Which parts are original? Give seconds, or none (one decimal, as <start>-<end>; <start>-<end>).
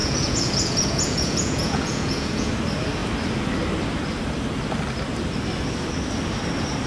2.5-6.9